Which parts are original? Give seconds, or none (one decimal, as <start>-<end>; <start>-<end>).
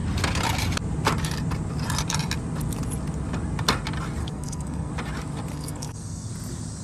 0.0-4.2; 4.9-5.5; 6.3-6.8